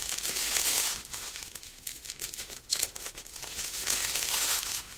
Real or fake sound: fake